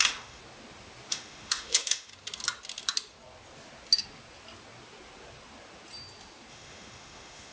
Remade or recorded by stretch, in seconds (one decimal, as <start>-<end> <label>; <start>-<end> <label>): 0.0-0.4 remade; 0.4-1.1 recorded; 1.1-2.1 remade; 2.1-6.5 recorded; 6.5-7.5 remade